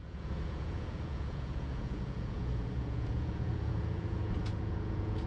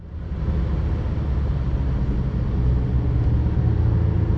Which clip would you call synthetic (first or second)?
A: first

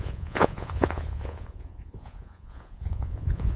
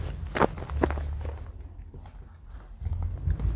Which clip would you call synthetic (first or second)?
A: first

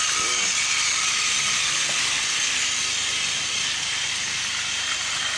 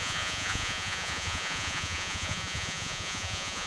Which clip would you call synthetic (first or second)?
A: second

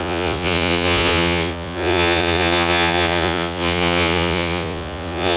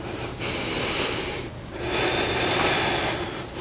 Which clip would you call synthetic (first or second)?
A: first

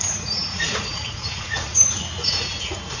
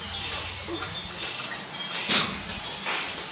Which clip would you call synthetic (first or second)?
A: first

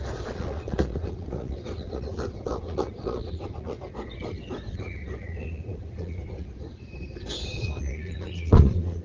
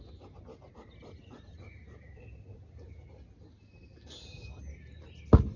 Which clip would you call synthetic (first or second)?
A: first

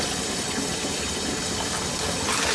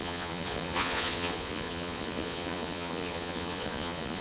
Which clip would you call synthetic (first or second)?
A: second